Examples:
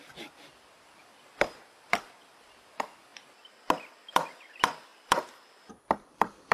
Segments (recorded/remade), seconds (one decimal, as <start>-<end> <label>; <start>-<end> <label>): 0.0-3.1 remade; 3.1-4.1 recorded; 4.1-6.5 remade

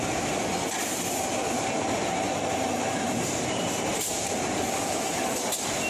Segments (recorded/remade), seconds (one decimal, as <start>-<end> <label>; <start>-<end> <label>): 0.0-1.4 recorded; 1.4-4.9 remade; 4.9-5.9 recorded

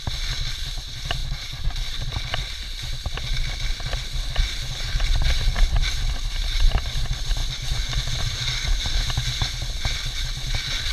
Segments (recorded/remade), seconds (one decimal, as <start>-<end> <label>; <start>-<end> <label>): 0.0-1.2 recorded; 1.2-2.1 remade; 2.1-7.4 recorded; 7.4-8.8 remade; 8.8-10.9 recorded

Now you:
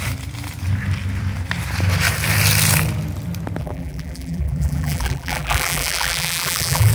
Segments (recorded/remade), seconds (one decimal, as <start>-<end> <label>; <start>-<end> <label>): 0.0-3.6 recorded; 3.6-6.9 remade

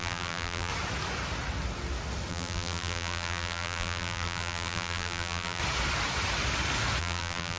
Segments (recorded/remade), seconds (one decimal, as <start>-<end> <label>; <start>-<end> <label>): 0.0-0.7 remade; 0.7-2.3 recorded; 2.3-5.6 remade; 5.6-7.0 recorded; 7.0-7.6 remade

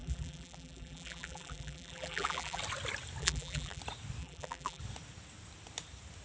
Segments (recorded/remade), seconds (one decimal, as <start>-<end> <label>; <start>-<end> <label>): 0.0-2.6 remade; 2.6-3.2 recorded; 3.2-3.8 remade; 3.8-4.2 recorded; 4.2-4.8 remade; 4.8-6.2 recorded

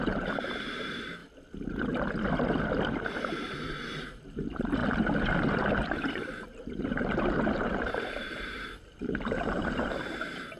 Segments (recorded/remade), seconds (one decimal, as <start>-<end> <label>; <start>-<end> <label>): 0.0-1.2 remade; 1.2-3.8 recorded; 3.8-4.8 remade; 4.8-6.1 recorded; 6.1-10.6 remade